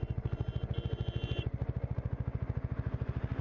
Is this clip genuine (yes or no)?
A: yes